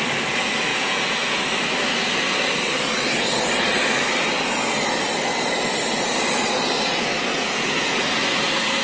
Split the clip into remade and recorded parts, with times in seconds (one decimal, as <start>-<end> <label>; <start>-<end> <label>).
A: 0.0-0.7 recorded; 0.7-1.4 remade; 1.4-7.3 recorded; 7.3-8.1 remade; 8.1-8.8 recorded